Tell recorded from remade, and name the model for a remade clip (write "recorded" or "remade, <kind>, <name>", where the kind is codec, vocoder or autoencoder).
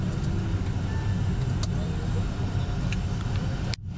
recorded